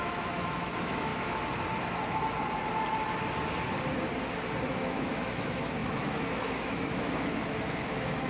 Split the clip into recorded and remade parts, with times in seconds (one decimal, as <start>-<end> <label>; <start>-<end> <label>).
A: 0.0-1.1 remade; 1.1-4.7 recorded; 4.7-8.3 remade

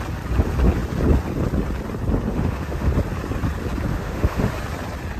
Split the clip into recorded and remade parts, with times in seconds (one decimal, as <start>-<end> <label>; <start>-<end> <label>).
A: 0.0-2.3 recorded; 2.3-2.9 remade; 2.9-3.9 recorded; 3.9-4.5 remade; 4.5-5.2 recorded